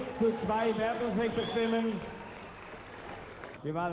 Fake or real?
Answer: fake